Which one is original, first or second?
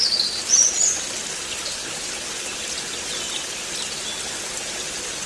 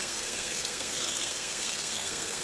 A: first